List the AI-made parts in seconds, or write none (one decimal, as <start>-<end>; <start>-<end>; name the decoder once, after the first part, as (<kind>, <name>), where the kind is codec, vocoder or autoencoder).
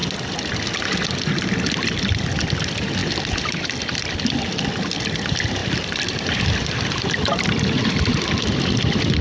0.0-0.5 (vocoder, BigVGAN v2); 3.0-3.8